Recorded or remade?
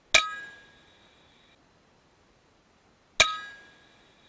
recorded